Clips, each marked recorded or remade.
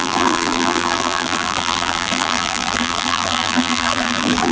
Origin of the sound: remade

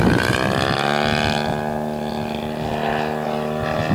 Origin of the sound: recorded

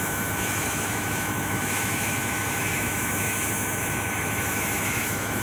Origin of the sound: remade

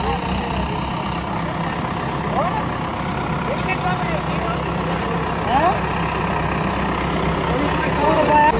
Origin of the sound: recorded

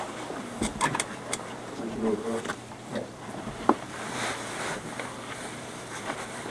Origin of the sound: remade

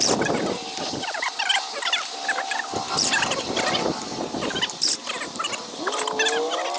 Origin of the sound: recorded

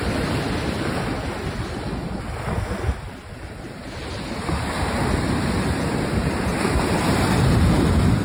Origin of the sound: recorded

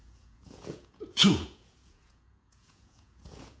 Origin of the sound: remade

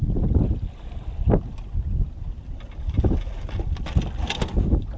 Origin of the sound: recorded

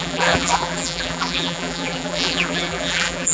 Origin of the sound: remade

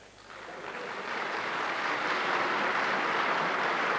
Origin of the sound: recorded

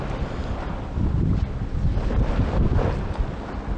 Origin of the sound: recorded